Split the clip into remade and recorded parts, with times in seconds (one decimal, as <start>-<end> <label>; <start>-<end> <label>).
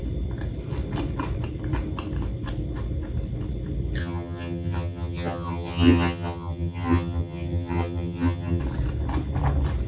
0.0-4.0 recorded; 4.0-8.6 remade; 8.6-9.9 recorded